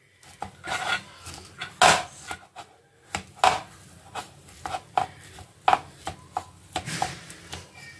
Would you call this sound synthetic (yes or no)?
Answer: no